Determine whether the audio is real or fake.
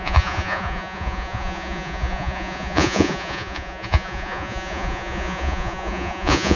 fake